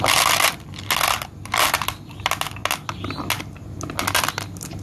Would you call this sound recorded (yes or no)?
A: yes